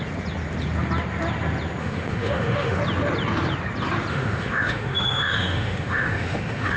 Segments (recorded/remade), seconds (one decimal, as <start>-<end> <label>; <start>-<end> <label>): 0.0-1.8 recorded; 1.8-2.8 remade; 2.8-4.1 recorded; 4.1-6.8 remade

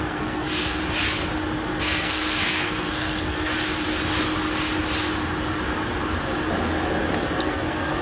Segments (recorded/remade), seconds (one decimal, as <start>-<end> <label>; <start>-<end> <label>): 0.0-0.8 remade; 0.8-1.8 recorded; 1.8-3.5 remade; 3.5-7.4 recorded; 7.4-8.0 remade

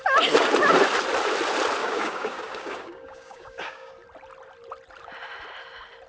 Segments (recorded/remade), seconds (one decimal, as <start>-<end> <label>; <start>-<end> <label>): 0.0-1.8 recorded; 1.8-3.9 remade; 3.9-6.1 recorded